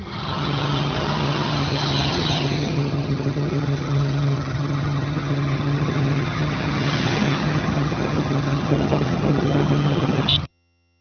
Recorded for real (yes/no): no